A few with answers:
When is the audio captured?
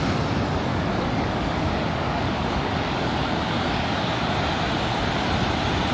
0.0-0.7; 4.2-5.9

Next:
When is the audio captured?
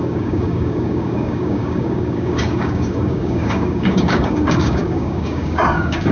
none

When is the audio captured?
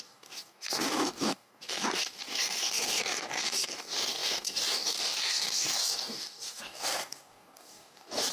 none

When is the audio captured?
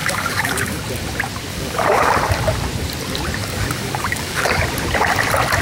0.8-1.5; 2.1-3.4; 4.6-5.6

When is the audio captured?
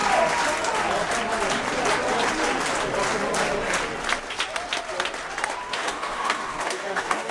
0.0-5.7